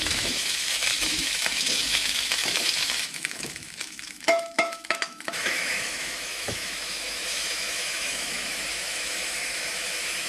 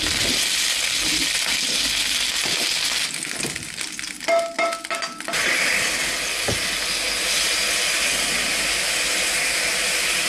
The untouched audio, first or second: second